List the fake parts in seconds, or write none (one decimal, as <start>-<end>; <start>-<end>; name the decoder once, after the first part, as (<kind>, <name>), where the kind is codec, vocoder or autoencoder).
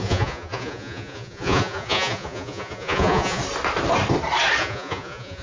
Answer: 0.0-3.4 (vocoder, Vocos); 4.6-5.4